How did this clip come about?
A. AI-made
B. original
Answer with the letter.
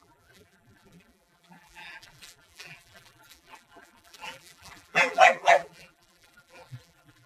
A